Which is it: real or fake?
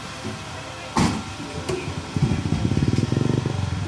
real